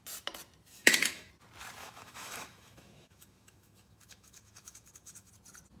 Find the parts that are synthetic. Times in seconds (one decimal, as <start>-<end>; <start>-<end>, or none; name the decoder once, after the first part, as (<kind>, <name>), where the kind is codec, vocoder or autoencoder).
0.7-1.3 (autoencoder, DAC-VAE); 1.8-5.3